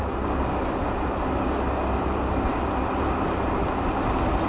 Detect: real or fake real